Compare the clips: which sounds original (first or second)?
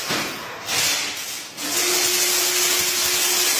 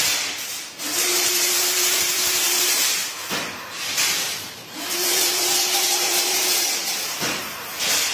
first